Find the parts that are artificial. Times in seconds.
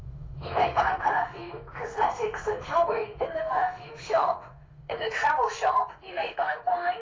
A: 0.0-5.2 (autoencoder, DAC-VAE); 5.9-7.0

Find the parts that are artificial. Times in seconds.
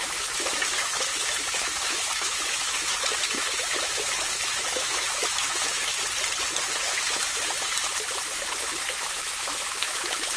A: 0.0-5.9 (autoencoder, DAC-VAE); 6.6-10.4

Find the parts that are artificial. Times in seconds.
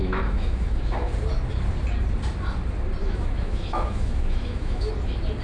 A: 0.0-1.1 (autoencoder, DAC-VAE); 3.0-4.9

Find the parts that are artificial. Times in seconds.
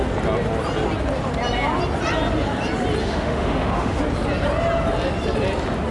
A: 3.0-4.0 (autoencoder, DAC-VAE)